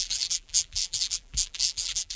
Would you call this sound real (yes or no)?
no